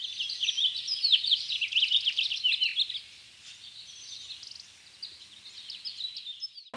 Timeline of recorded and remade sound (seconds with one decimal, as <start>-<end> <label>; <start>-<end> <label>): 0.0-6.8 recorded